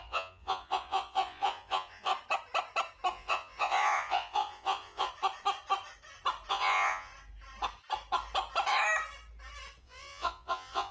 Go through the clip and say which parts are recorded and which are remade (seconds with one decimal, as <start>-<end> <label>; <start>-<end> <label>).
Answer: 0.0-2.1 remade; 2.1-3.1 recorded; 3.1-5.1 remade; 5.1-6.5 recorded; 6.5-7.1 remade; 7.1-9.8 recorded; 9.8-10.9 remade

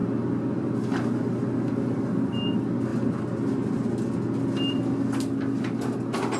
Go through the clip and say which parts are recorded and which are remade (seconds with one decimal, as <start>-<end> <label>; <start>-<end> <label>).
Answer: 0.0-2.9 recorded; 2.9-3.9 remade; 3.9-6.4 recorded